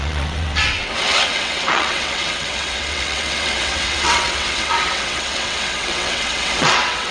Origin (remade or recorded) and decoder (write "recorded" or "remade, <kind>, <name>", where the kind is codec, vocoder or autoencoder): remade, vocoder, WaveNeXt